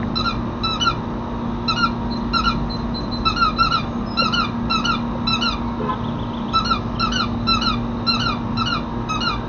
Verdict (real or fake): real